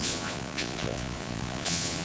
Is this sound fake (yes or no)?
yes